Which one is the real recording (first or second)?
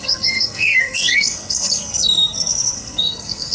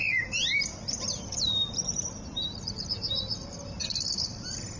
second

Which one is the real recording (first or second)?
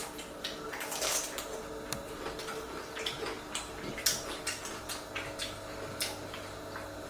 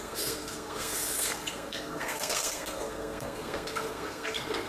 first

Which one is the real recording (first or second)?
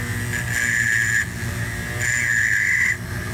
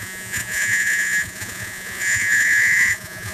first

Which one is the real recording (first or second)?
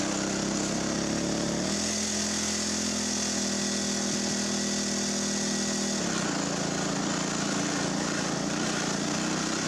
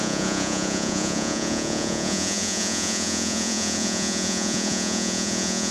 first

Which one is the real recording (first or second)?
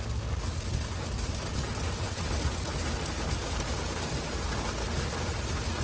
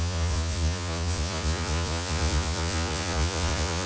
first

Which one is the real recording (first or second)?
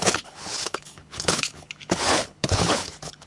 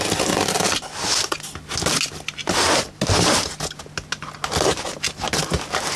second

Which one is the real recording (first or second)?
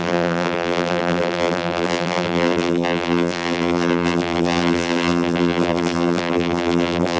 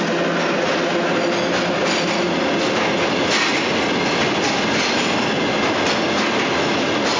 second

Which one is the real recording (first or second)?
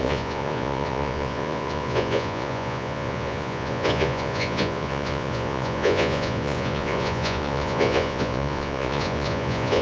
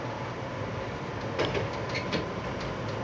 second